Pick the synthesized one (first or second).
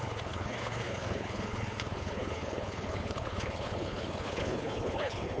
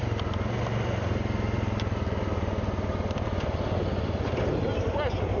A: first